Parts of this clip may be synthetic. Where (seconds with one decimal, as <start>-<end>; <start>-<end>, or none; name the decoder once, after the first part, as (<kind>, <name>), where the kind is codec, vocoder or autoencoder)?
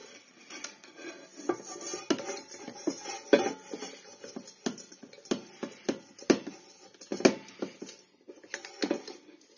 0.0-1.1 (vocoder, Vocos)